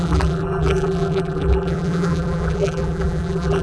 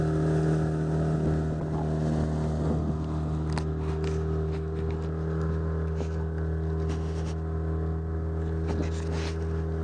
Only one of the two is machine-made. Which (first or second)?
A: first